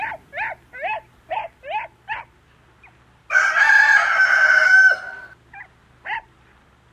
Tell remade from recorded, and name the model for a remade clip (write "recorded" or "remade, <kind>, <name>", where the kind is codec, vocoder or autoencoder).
recorded